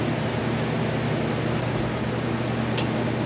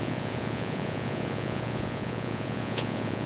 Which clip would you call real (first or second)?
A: first